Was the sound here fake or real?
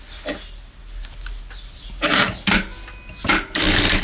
real